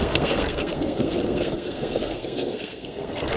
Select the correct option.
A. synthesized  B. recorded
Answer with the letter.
A